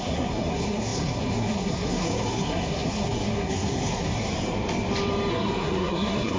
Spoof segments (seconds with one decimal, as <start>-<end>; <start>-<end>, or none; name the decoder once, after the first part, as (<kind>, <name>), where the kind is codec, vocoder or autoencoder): 0.0-4.3 (codec, SNAC); 5.3-6.4